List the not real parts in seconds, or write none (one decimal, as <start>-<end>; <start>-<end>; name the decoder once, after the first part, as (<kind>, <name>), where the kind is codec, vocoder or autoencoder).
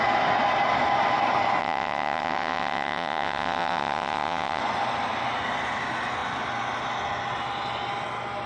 1.6-4.6 (vocoder, WaveNeXt)